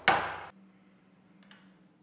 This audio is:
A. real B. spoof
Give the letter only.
A